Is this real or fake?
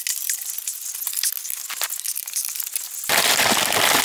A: real